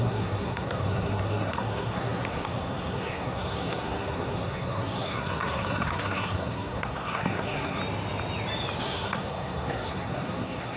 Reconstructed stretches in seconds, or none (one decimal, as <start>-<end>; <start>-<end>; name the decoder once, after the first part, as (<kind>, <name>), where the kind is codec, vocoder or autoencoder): 0.0-7.8 (codec, SNAC); 8.8-10.8